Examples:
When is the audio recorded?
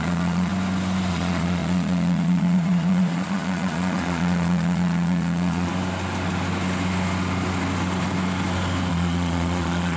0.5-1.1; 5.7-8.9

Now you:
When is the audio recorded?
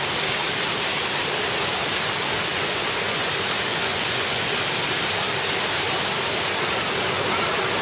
0.0-2.5; 3.3-3.7; 4.5-7.8